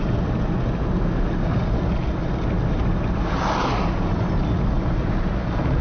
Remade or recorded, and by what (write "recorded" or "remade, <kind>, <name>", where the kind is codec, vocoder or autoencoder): recorded